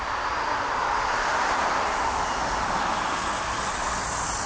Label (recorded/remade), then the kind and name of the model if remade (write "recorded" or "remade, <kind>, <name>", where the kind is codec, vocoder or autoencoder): recorded